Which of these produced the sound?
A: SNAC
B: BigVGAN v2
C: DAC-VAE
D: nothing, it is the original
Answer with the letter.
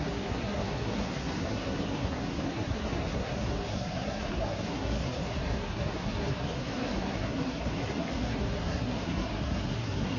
A